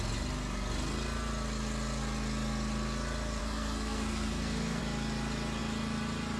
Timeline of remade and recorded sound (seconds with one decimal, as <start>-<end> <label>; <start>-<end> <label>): 0.0-3.4 recorded; 3.4-4.8 remade; 4.8-6.4 recorded